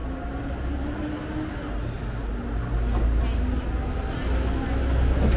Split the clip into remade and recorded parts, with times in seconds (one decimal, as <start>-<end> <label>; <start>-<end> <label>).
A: 0.0-5.4 recorded